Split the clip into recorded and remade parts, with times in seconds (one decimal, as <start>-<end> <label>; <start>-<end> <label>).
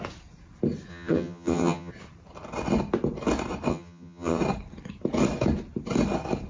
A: 0.0-0.9 recorded; 0.9-1.9 remade; 1.9-3.7 recorded; 3.7-4.4 remade; 4.4-6.5 recorded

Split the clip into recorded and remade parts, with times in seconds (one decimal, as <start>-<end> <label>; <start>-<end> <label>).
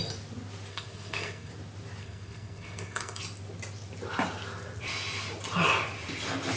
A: 0.0-0.7 recorded; 0.7-1.5 remade; 1.5-2.0 recorded; 2.0-3.2 remade; 3.2-6.6 recorded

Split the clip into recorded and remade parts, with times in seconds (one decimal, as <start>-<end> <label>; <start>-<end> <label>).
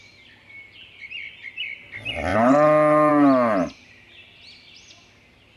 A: 0.0-5.6 recorded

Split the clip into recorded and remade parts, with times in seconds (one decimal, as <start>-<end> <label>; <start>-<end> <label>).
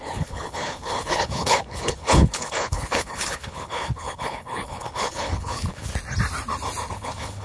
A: 0.0-5.9 remade; 5.9-6.9 recorded; 6.9-7.4 remade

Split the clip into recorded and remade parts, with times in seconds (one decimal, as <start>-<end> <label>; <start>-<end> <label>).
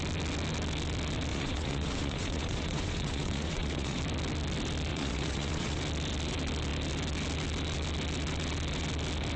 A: 0.0-1.3 recorded; 1.3-4.0 remade; 4.0-4.9 recorded; 4.9-5.8 remade; 5.8-9.4 recorded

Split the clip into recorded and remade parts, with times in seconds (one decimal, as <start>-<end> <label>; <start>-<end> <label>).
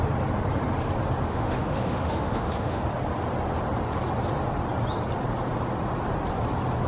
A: 0.0-1.3 recorded; 1.3-2.8 remade; 2.8-6.9 recorded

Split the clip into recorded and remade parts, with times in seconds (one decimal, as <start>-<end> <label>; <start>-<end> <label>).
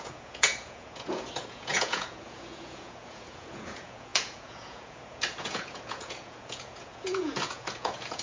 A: 0.0-8.2 remade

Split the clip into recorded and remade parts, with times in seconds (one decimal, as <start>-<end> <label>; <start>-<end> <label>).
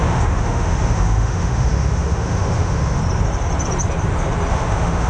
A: 0.0-3.0 remade; 3.0-4.5 recorded; 4.5-5.1 remade